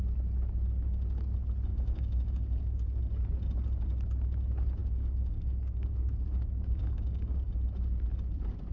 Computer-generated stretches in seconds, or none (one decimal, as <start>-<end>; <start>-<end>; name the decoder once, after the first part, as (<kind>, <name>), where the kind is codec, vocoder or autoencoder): 1.7-3.0 (codec, DAC); 4.8-7.5